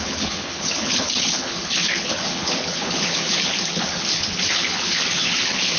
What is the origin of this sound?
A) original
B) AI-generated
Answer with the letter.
B